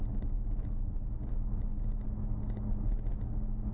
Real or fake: real